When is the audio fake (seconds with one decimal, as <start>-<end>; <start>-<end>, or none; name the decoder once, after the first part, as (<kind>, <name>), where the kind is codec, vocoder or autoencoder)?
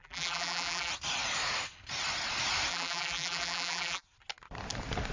0.0-0.9 (vocoder, BigVGAN v2); 2.7-4.0